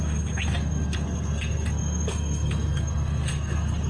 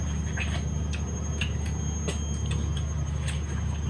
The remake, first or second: first